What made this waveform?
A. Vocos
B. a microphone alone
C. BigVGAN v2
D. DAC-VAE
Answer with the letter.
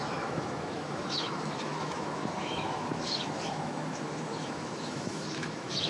D